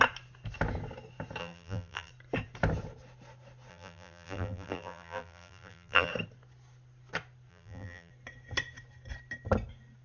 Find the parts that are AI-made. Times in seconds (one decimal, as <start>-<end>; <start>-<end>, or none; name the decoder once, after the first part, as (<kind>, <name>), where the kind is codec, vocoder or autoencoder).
1.4-2.1 (vocoder, BigVGAN v2); 3.7-6.1; 7.5-8.1